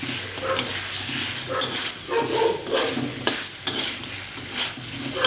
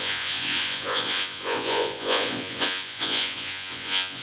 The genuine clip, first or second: first